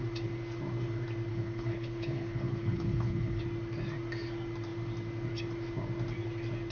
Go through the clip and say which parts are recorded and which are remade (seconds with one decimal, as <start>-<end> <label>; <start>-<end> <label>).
0.0-1.3 recorded; 1.3-3.4 remade; 3.4-6.7 recorded